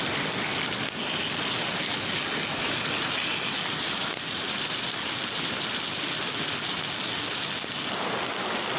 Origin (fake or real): real